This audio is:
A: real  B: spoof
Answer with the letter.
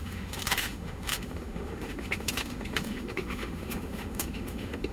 B